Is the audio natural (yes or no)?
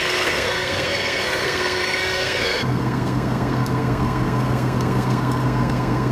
no